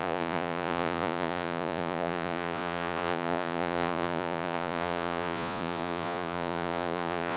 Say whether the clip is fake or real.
fake